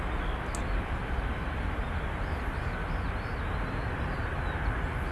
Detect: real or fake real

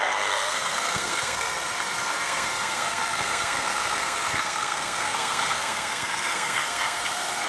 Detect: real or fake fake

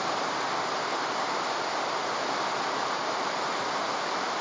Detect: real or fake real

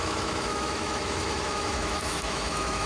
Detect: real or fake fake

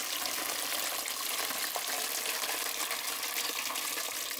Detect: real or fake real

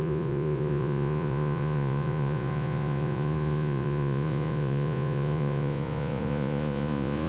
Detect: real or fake fake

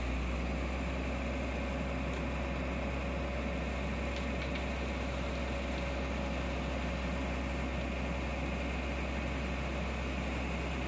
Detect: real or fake real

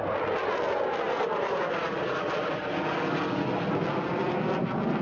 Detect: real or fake real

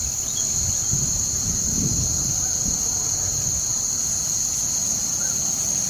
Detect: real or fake real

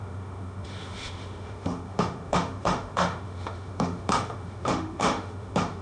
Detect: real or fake fake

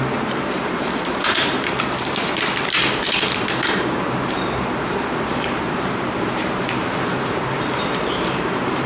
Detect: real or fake fake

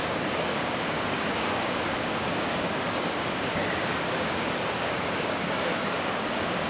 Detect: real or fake fake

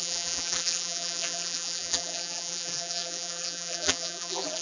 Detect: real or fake fake